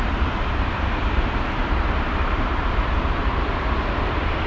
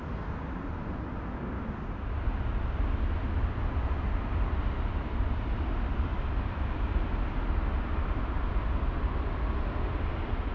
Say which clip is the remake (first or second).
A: first